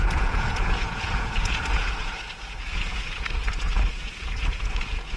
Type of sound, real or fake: fake